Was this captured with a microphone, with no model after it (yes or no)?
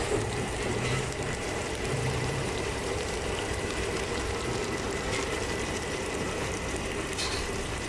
no